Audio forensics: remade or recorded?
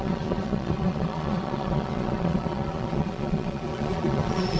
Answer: remade